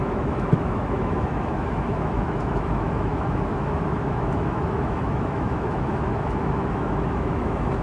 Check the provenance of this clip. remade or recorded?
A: remade